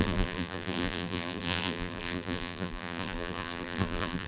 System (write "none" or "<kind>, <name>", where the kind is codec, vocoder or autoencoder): vocoder, BigVGAN v2